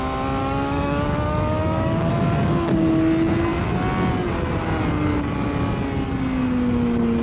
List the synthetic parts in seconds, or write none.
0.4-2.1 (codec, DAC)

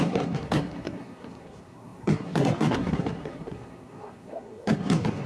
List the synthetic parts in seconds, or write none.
0.0-5.3 (codec, SNAC)